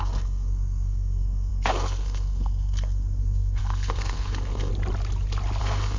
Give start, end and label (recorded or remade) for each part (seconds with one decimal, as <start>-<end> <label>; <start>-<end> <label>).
0.0-4.7 remade; 4.7-5.6 recorded; 5.6-6.0 remade